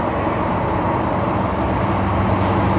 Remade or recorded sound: recorded